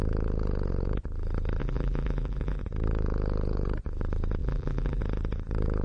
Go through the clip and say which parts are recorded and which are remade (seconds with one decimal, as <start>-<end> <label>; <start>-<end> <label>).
0.0-1.6 recorded; 1.6-2.6 remade; 2.6-4.4 recorded; 4.4-5.0 remade; 5.0-5.8 recorded